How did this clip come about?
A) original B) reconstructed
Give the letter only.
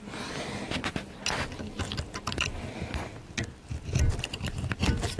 A